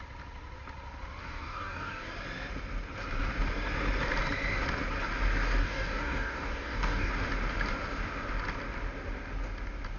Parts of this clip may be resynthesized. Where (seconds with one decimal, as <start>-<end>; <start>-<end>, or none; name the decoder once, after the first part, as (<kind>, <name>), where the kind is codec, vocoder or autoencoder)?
1.2-2.1 (codec, DAC); 5.6-7.1